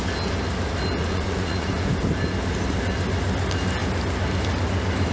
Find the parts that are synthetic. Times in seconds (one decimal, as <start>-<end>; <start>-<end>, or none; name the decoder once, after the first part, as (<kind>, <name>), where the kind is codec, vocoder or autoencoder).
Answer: 1.0-1.9 (vocoder, Vocos)